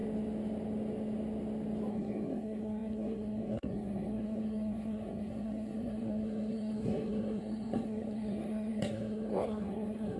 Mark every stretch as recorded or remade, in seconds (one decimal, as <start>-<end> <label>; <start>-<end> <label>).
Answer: 0.0-1.9 recorded; 1.9-10.2 remade